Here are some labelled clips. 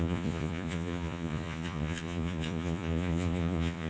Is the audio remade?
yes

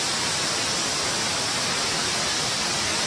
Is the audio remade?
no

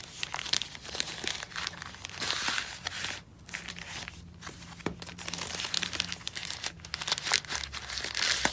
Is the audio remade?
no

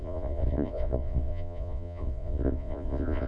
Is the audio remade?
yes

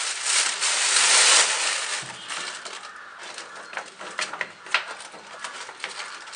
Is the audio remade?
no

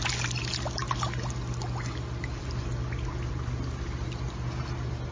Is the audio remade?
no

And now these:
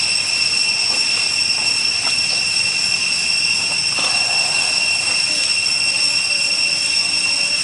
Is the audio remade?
no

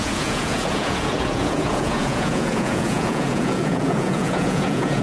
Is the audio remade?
yes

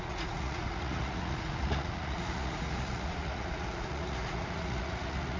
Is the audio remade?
yes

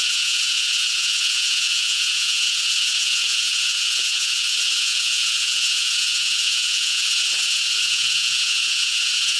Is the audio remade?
yes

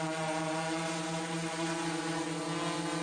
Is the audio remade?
no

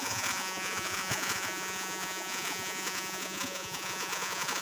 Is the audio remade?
yes